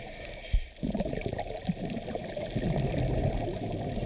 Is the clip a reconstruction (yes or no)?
no